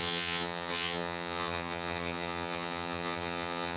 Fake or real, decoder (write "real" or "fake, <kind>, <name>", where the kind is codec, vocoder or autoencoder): fake, vocoder, HiFi-GAN